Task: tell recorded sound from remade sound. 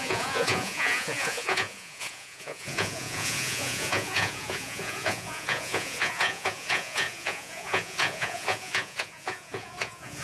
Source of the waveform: remade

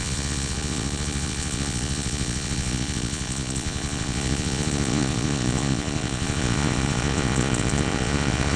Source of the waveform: remade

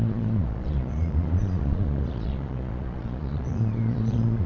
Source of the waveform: remade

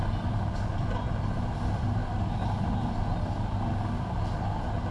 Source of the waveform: recorded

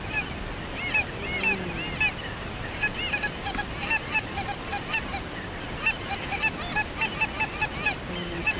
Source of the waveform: recorded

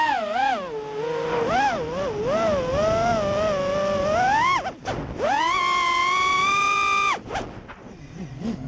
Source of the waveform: recorded